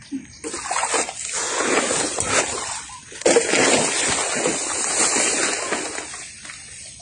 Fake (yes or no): no